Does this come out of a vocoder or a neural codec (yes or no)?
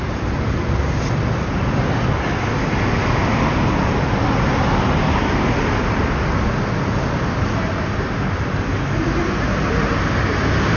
no